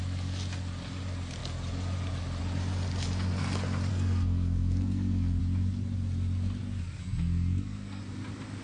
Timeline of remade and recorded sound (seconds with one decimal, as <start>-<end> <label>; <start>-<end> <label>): 0.0-3.9 recorded; 3.9-5.4 remade; 5.4-7.0 recorded; 7.0-8.0 remade; 8.0-8.6 recorded